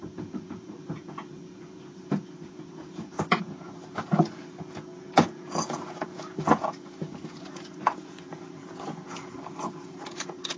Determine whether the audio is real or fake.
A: fake